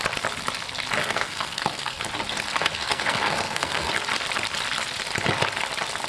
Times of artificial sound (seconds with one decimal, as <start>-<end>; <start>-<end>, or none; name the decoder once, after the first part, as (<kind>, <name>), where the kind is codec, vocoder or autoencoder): 1.0-2.0 (codec, SNAC); 2.5-3.9